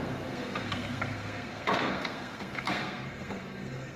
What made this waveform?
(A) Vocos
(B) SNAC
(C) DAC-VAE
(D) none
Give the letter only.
B